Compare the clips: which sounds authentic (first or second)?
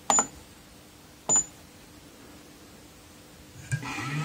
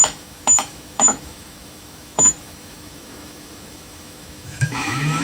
first